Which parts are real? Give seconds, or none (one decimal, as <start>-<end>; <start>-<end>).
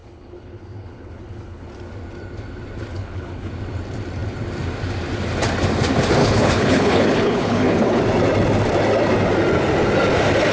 1.7-2.9; 3.5-6.2; 8.0-10.5